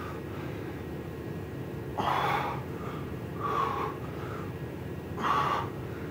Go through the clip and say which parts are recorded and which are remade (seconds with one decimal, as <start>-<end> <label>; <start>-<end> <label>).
0.0-1.9 recorded; 1.9-5.6 remade; 5.6-6.1 recorded